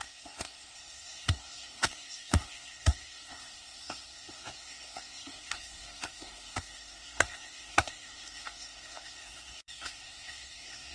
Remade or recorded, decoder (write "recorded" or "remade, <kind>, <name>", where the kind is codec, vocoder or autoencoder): remade, codec, SNAC